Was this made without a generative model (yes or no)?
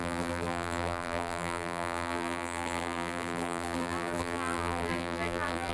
no